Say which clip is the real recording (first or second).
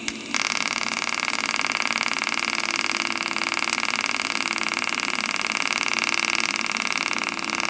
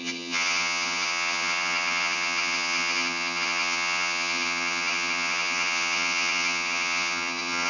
first